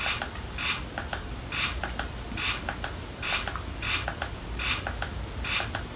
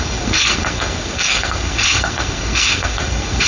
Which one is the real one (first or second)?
first